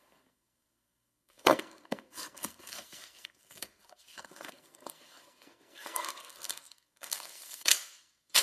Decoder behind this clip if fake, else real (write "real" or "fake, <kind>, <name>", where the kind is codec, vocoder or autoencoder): fake, codec, SNAC